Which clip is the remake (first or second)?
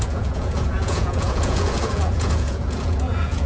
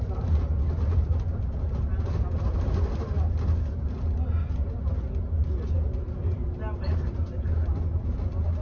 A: first